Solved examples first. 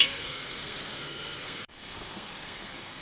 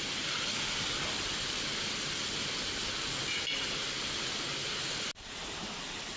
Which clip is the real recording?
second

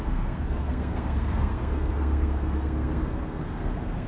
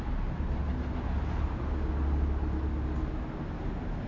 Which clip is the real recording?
second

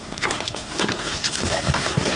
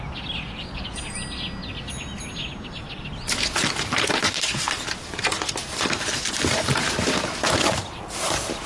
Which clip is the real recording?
second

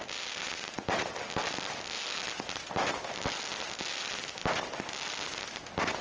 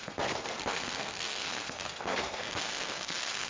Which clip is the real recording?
first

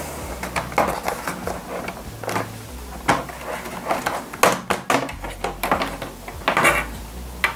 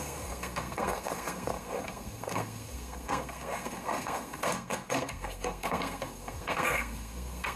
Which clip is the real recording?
first